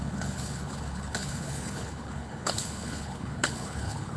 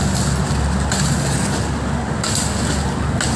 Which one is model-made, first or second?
first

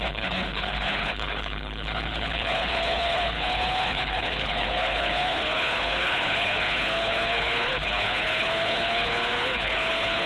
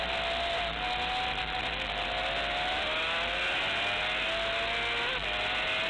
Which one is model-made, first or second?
first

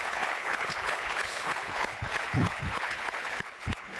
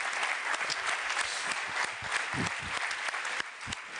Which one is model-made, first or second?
first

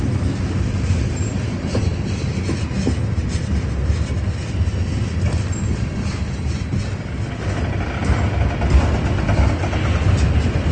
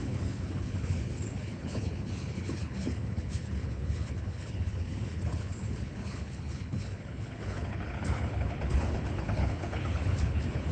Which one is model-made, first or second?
second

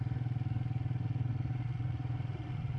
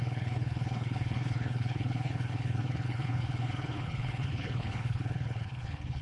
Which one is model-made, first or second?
second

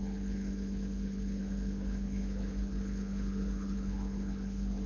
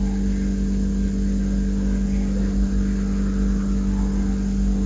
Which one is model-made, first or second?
first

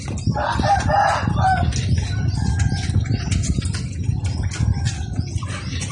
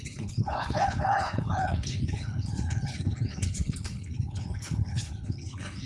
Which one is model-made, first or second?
second